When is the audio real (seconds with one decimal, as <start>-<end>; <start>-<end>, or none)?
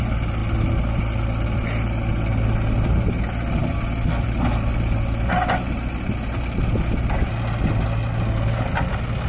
0.0-9.3